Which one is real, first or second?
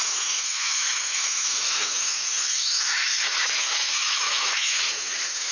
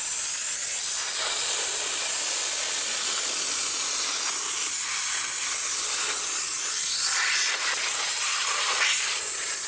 second